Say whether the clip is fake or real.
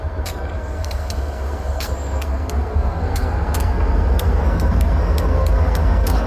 fake